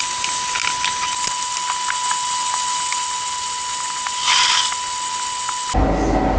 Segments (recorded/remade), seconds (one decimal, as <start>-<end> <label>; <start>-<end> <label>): 0.0-6.4 recorded